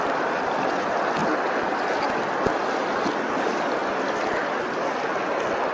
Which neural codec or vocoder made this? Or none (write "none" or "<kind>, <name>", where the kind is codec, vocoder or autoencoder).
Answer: none